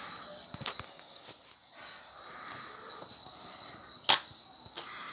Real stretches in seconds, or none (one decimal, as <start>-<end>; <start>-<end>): 0.0-5.1